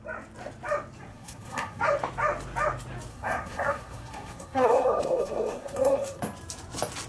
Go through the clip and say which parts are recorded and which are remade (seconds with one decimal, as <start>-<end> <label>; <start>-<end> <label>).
0.0-1.1 recorded; 1.1-1.8 remade; 1.8-3.1 recorded; 3.1-6.2 remade; 6.2-7.1 recorded